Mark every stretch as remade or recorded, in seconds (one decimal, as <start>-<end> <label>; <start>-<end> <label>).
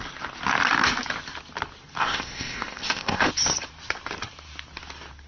0.0-2.0 recorded; 2.0-3.3 remade; 3.3-5.3 recorded